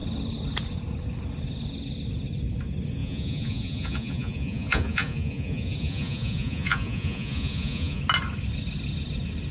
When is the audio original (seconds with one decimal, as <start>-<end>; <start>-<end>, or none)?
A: 0.0-3.0; 8.0-9.5